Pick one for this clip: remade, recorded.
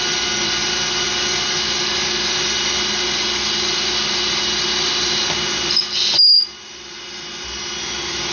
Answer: recorded